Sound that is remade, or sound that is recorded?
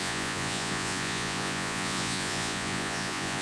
remade